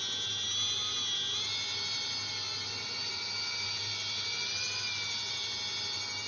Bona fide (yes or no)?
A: yes